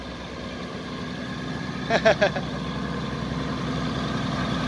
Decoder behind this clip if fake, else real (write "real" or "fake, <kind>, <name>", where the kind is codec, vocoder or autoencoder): real